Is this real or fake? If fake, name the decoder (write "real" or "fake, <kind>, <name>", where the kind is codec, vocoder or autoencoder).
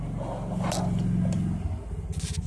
real